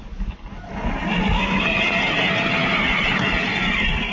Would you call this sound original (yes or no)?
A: yes